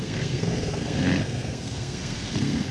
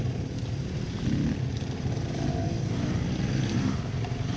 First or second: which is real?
second